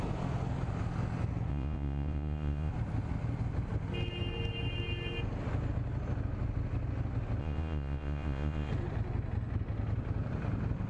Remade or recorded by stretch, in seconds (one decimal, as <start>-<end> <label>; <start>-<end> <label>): 0.0-1.5 recorded; 1.5-2.7 remade; 2.7-7.4 recorded; 7.4-8.7 remade; 8.7-10.9 recorded